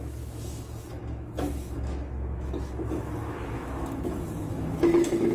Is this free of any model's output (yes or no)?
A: no